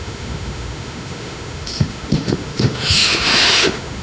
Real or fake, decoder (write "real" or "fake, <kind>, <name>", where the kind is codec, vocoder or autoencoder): fake, autoencoder, DAC-VAE